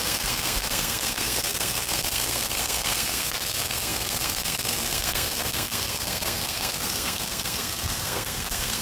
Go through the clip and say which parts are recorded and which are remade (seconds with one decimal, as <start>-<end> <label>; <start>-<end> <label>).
0.0-8.8 remade